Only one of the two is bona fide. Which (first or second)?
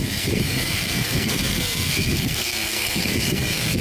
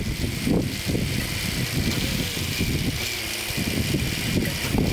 second